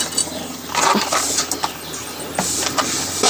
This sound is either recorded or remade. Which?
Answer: recorded